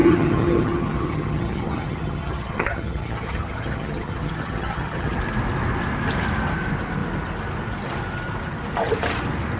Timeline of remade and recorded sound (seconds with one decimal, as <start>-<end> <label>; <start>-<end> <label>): 0.0-5.2 remade; 5.2-9.6 recorded